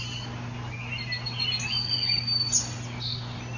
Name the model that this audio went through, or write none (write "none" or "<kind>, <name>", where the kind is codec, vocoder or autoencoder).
none